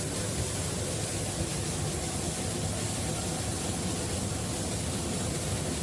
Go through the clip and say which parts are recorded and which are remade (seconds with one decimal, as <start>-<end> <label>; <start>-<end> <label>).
0.0-5.8 recorded